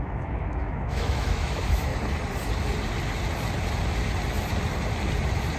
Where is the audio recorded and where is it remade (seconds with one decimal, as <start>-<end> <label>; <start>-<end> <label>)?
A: 0.0-1.9 remade; 1.9-5.6 recorded